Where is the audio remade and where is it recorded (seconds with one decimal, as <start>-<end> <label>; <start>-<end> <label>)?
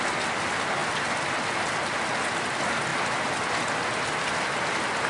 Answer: 0.0-5.1 recorded